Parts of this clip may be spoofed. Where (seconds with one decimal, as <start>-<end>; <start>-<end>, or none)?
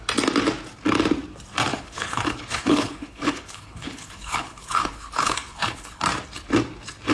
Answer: 1.7-6.0